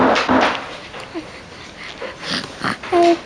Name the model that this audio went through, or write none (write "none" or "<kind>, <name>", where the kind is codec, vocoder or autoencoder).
none